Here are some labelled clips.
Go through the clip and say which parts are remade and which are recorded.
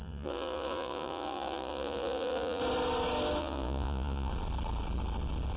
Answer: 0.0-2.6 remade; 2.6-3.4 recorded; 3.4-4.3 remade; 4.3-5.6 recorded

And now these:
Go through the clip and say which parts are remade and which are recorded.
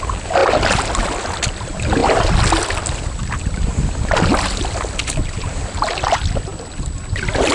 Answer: 0.0-7.5 recorded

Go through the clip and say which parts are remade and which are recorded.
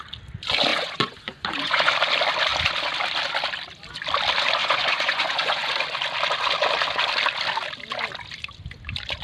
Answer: 0.0-0.7 recorded; 0.7-1.9 remade; 1.9-4.6 recorded; 4.6-5.7 remade; 5.7-9.2 recorded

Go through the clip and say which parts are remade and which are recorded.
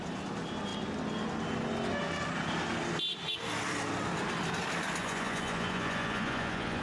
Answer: 0.0-5.0 recorded; 5.0-6.8 remade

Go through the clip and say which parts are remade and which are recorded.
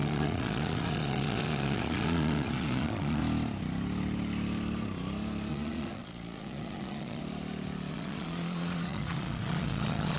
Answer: 0.0-3.2 remade; 3.2-5.5 recorded; 5.5-7.2 remade; 7.2-7.9 recorded; 7.9-10.2 remade